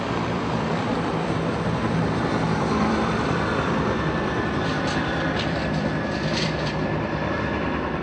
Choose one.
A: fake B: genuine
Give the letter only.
A